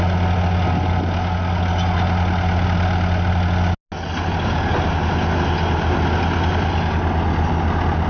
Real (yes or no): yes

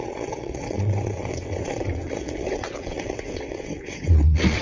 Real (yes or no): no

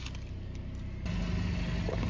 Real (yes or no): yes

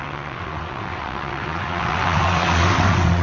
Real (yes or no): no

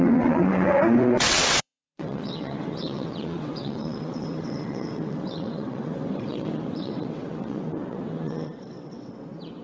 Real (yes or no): no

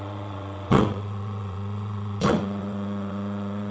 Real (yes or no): no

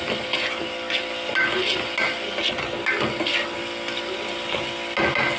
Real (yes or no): yes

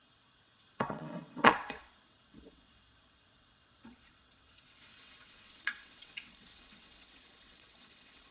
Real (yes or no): no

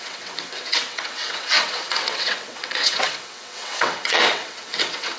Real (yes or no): no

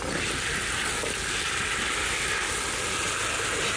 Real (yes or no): yes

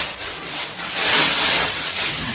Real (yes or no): no